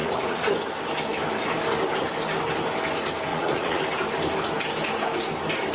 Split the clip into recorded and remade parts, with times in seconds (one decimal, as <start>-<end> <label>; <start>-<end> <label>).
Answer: 0.0-0.5 remade; 0.5-3.3 recorded; 3.3-3.8 remade; 3.8-5.7 recorded

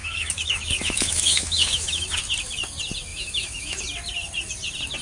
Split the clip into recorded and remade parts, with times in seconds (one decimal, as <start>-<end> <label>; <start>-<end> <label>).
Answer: 0.0-2.2 remade; 2.2-3.1 recorded; 3.1-3.8 remade; 3.8-5.0 recorded